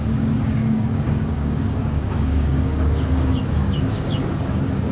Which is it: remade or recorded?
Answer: remade